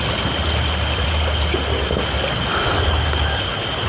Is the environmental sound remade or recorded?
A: recorded